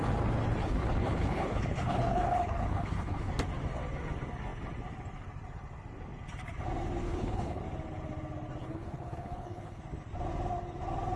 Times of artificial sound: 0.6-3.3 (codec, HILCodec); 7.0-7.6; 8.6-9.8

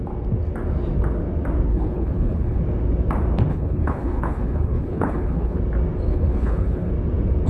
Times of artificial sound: 1.7-2.6 (codec, HILCodec); 3.5-5.6; 6.1-6.9

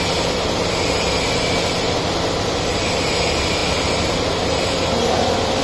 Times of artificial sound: none